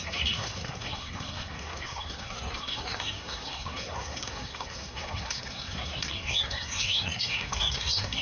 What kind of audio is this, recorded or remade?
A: remade